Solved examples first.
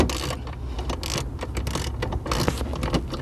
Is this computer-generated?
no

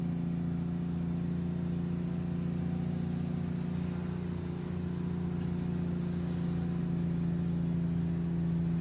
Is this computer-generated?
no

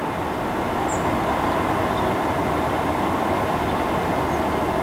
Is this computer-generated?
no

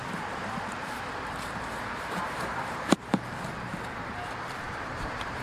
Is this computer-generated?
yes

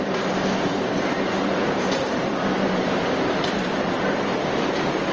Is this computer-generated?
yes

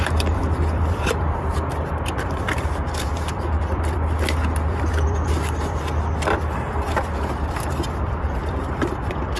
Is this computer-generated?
yes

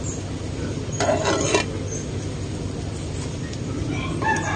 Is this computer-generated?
no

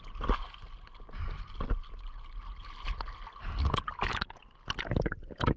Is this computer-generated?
no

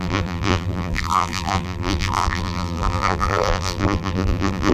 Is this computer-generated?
yes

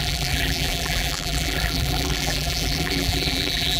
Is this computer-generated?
yes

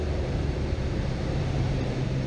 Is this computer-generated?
yes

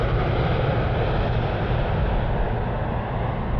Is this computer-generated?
no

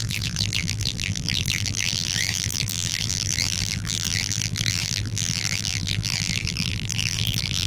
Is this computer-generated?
yes